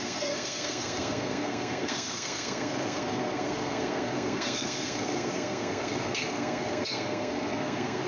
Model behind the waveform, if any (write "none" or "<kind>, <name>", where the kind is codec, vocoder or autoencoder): codec, SNAC